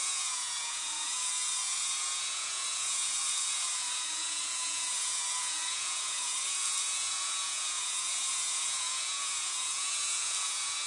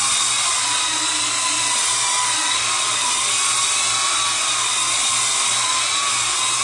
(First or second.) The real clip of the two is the second